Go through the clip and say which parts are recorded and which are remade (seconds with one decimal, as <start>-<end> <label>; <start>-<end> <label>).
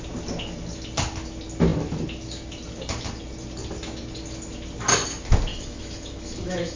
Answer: 0.0-5.5 recorded; 5.5-6.8 remade